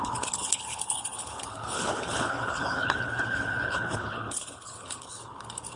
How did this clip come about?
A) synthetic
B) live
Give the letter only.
A